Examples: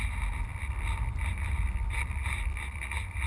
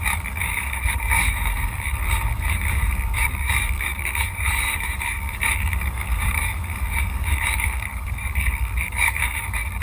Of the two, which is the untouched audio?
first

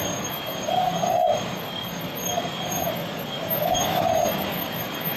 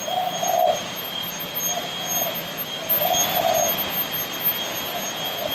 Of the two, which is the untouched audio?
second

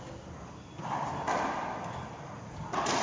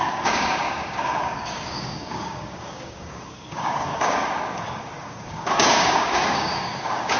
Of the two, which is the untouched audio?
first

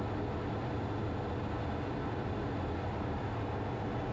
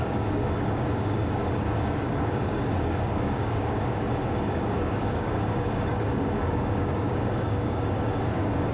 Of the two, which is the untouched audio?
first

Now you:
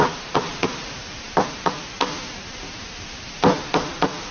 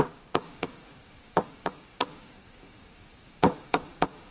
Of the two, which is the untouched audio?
first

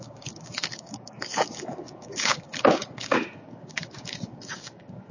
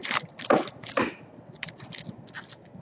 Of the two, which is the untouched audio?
second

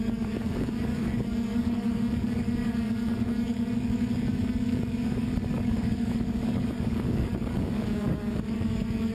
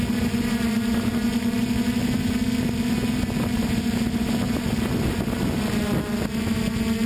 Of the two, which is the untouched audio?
second